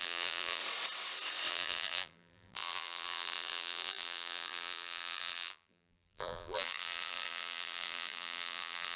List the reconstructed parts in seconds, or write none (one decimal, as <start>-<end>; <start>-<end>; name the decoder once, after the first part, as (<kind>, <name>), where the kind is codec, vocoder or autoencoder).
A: 0.0-0.6 (vocoder, BigVGAN v2); 1.5-9.0

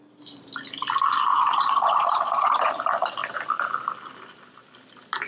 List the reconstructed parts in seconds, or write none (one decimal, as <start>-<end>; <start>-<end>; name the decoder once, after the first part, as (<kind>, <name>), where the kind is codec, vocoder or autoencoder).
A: 1.3-2.7 (vocoder, Vocos)